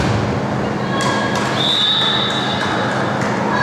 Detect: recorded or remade recorded